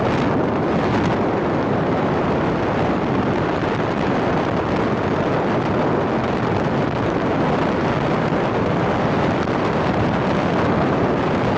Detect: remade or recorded recorded